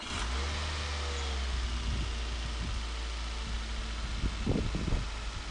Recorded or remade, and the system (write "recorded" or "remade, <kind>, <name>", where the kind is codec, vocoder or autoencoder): recorded